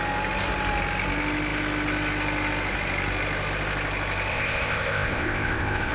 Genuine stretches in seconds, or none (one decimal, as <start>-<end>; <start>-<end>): 0.0-4.3